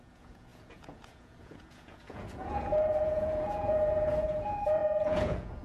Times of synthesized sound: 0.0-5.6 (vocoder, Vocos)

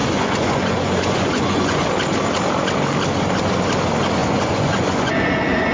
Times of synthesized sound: 0.0-1.8 (vocoder, Vocos); 4.2-5.7

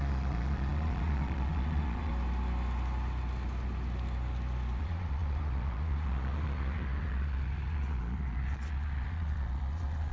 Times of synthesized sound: 0.0-2.1 (vocoder, Vocos); 4.8-10.1

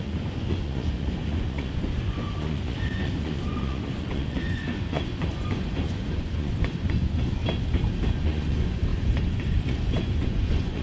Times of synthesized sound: 0.0-7.4 (vocoder, Vocos); 8.1-10.8

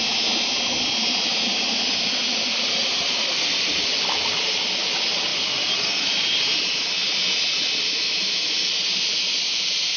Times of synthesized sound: none

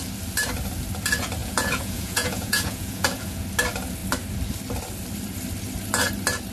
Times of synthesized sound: 1.4-3.4 (vocoder, Vocos)